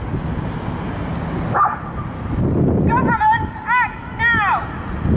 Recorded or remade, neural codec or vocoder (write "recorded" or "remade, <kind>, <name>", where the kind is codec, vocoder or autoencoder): recorded